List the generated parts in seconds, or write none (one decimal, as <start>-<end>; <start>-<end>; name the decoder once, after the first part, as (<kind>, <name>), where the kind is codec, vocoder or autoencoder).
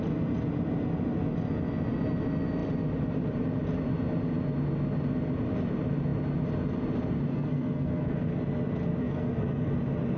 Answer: 7.3-8.4 (codec, SNAC); 9.0-9.7